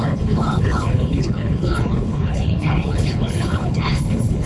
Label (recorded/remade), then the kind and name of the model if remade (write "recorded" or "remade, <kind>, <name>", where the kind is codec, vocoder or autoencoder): remade, codec, HILCodec